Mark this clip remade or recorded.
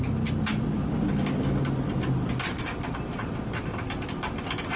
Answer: recorded